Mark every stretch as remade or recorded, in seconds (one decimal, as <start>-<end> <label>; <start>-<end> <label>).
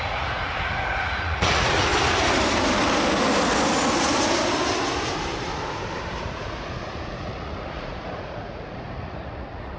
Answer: 0.0-1.9 remade; 1.9-6.2 recorded; 6.2-9.8 remade